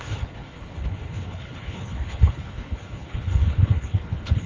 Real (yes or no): no